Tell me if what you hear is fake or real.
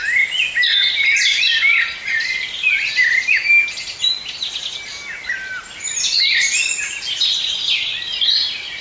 real